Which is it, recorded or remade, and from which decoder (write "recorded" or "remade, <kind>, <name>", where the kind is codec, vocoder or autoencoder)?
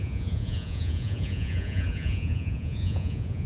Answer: remade, vocoder, Vocos